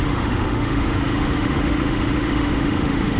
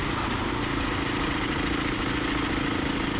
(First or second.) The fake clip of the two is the first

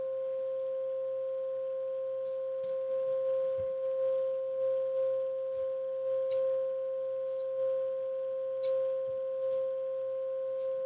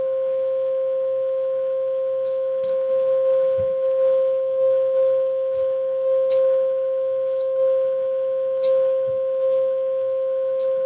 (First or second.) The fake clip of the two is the second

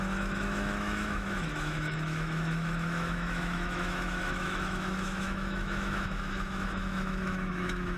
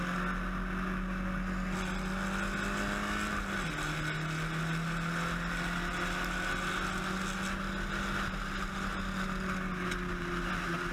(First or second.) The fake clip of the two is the first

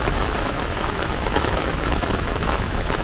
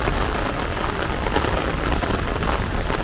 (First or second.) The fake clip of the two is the first